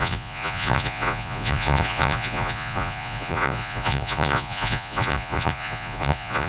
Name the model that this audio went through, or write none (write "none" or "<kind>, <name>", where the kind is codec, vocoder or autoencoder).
vocoder, Vocos